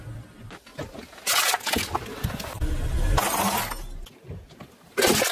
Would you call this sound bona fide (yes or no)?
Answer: yes